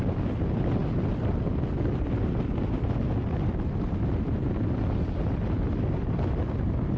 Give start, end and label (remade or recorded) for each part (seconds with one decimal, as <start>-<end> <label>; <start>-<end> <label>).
0.0-7.0 recorded

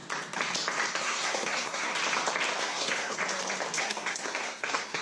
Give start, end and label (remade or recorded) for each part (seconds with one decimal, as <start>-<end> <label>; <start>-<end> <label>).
0.0-1.0 recorded; 1.0-1.9 remade; 1.9-2.6 recorded; 2.6-3.2 remade; 3.2-3.8 recorded; 3.8-5.0 remade